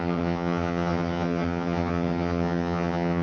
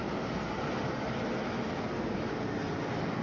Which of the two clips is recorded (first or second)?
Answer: second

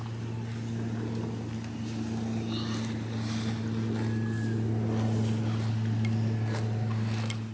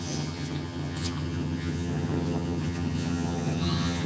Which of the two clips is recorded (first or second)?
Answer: first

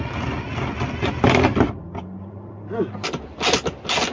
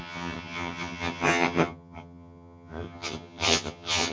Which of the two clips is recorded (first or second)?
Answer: first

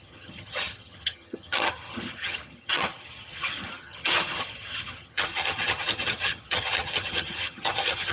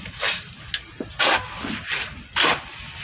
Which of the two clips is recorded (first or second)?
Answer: second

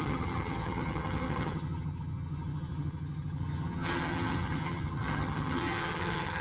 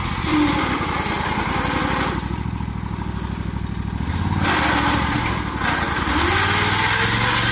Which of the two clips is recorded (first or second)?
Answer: second